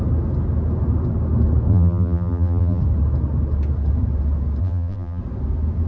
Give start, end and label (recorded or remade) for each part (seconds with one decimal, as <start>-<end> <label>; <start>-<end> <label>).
0.0-1.7 recorded; 1.7-2.8 remade; 2.8-4.6 recorded; 4.6-5.2 remade; 5.2-5.9 recorded